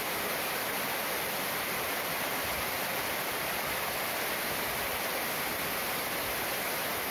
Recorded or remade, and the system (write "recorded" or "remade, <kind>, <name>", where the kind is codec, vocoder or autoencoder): remade, vocoder, BigVGAN v2